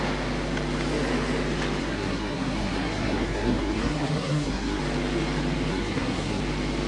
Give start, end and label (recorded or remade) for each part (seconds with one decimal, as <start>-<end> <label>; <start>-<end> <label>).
0.0-1.8 recorded; 1.8-4.8 remade; 4.8-5.7 recorded; 5.7-6.4 remade; 6.4-6.9 recorded